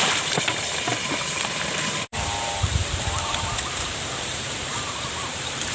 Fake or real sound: fake